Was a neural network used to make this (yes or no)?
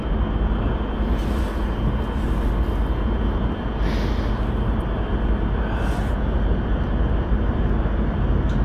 no